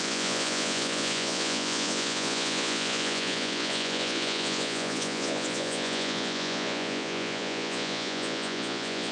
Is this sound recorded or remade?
remade